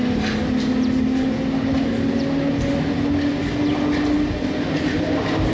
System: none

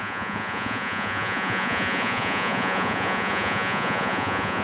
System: vocoder, Vocos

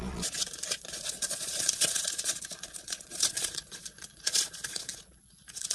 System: vocoder, Vocos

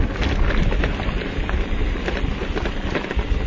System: none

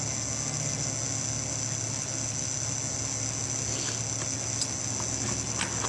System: none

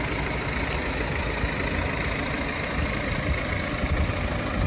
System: none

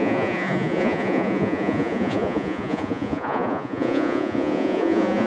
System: vocoder, Vocos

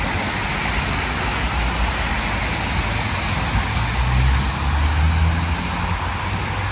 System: none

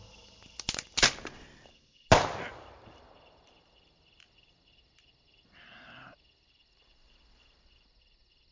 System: none